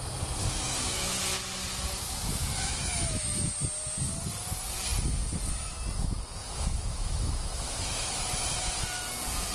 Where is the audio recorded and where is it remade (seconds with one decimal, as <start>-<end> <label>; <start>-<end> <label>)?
0.0-0.4 recorded; 0.4-1.2 remade; 1.2-2.5 recorded; 2.5-3.4 remade; 3.4-6.4 recorded; 6.4-8.8 remade; 8.8-9.5 recorded